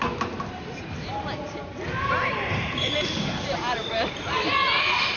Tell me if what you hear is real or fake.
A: real